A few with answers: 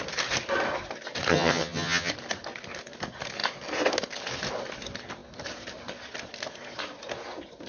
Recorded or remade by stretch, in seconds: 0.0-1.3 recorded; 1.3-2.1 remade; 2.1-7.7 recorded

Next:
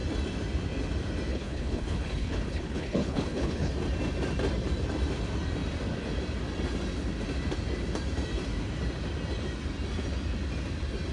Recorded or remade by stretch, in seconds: 0.0-1.3 recorded; 1.3-3.7 remade; 3.7-11.1 recorded

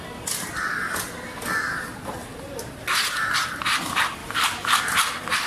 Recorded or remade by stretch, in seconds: 0.0-2.2 recorded; 2.2-3.6 remade; 3.6-4.2 recorded; 4.2-4.8 remade; 4.8-5.5 recorded

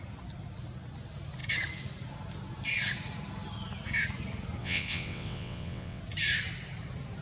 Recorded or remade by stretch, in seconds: 0.0-4.6 recorded; 4.6-6.0 remade; 6.0-7.2 recorded

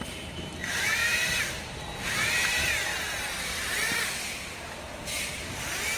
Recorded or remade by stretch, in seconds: 0.0-2.9 remade; 2.9-5.0 recorded; 5.0-6.0 remade

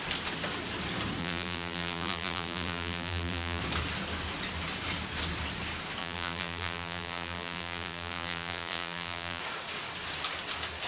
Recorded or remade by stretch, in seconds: 0.0-1.2 recorded; 1.2-3.6 remade; 3.6-6.0 recorded; 6.0-9.4 remade; 9.4-10.9 recorded